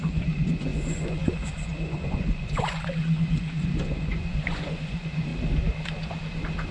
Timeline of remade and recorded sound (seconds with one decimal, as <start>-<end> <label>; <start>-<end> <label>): 0.0-5.3 remade; 5.3-6.7 recorded